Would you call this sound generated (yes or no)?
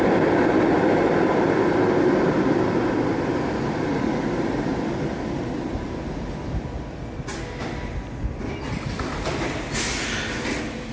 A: no